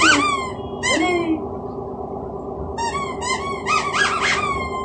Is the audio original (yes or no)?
yes